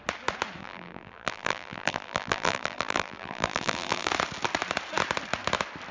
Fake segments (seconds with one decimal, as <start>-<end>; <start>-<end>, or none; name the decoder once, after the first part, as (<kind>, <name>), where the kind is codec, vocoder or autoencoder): 0.6-4.1 (vocoder, BigVGAN v2)